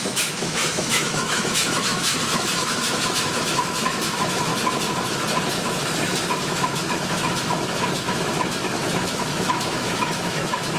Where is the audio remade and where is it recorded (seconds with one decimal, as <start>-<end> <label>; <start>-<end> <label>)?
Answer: 0.0-4.5 remade; 4.5-6.4 recorded; 6.4-10.8 remade